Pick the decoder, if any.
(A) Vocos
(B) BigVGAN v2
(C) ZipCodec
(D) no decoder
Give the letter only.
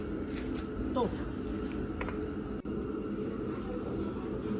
D